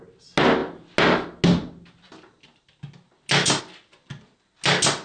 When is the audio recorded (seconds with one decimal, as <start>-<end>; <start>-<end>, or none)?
0.0-5.0